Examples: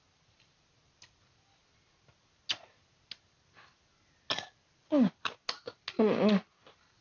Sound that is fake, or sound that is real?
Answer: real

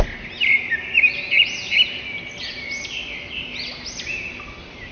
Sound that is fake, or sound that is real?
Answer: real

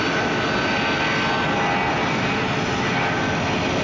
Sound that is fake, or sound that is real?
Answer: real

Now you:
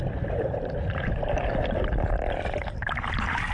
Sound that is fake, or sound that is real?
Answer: real